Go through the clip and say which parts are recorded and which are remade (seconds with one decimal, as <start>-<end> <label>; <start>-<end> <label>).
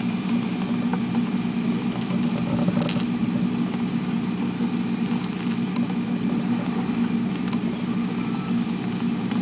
0.0-9.4 recorded